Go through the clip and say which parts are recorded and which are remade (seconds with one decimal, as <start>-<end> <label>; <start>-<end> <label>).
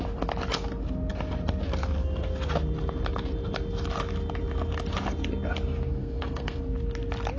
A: 0.0-5.9 recorded; 5.9-6.6 remade; 6.6-7.4 recorded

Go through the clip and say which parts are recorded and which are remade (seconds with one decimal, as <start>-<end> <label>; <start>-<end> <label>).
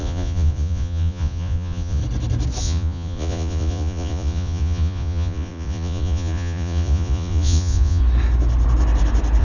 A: 0.0-2.0 remade; 2.0-2.6 recorded; 2.6-8.0 remade; 8.0-9.4 recorded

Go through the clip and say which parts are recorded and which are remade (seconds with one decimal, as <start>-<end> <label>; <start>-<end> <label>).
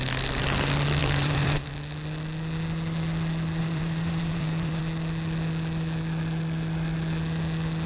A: 0.0-1.0 recorded; 1.0-1.7 remade; 1.7-3.6 recorded; 3.6-4.8 remade; 4.8-7.9 recorded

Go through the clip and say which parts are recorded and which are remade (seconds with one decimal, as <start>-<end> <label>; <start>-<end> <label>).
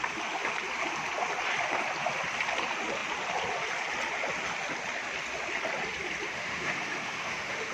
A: 0.0-6.3 recorded; 6.3-7.7 remade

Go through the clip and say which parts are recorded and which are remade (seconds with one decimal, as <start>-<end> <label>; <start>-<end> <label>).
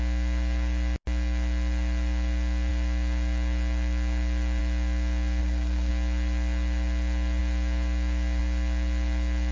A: 0.0-5.4 recorded; 5.4-5.9 remade; 5.9-9.5 recorded